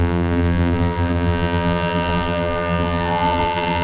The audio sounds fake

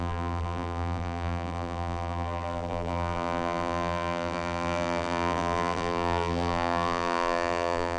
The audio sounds fake